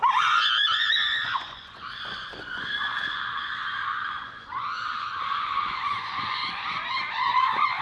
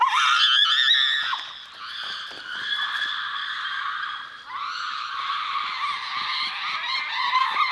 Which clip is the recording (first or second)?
second